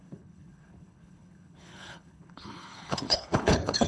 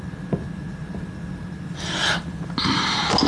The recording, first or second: second